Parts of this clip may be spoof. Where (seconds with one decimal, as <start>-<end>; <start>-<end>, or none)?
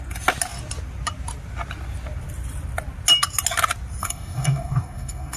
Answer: 4.0-5.4